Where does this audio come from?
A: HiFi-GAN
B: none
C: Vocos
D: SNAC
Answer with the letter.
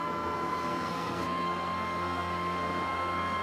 D